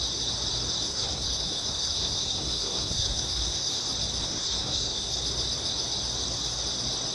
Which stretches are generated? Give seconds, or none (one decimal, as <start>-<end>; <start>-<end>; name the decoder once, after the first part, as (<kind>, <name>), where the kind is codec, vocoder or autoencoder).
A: 0.9-3.7 (codec, SNAC); 4.2-5.1